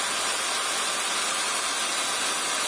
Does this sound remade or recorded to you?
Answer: recorded